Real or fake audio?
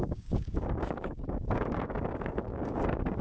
fake